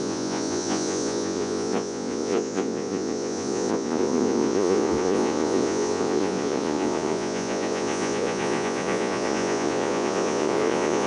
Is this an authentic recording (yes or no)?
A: no